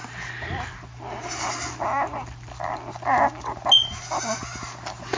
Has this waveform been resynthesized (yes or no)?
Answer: no